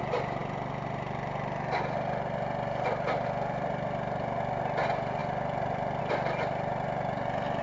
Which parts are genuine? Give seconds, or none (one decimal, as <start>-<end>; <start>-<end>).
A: 0.0-7.6